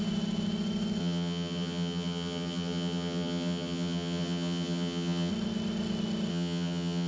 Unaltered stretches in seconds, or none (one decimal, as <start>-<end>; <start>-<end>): 0.0-1.0; 5.3-6.3